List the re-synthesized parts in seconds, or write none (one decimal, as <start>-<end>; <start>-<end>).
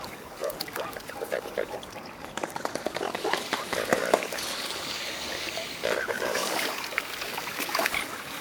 0.0-8.4